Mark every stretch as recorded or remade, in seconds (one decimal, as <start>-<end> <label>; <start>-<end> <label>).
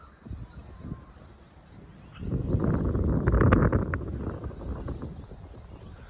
0.0-6.1 recorded